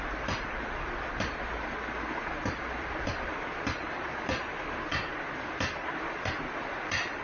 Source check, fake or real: real